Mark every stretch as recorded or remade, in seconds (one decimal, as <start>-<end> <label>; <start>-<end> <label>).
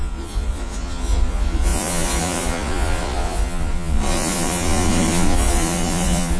0.0-6.4 remade